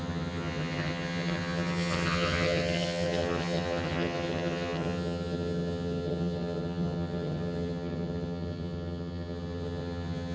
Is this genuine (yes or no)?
no